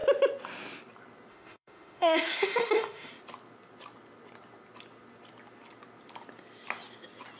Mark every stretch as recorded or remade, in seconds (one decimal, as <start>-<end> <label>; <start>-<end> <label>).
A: 0.0-1.3 recorded; 1.3-3.1 remade; 3.1-7.4 recorded